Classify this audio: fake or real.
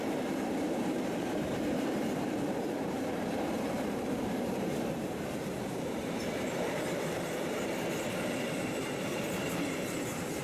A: fake